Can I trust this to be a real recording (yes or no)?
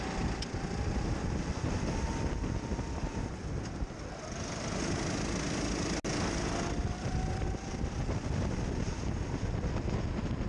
yes